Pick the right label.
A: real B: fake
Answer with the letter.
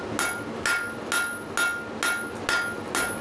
A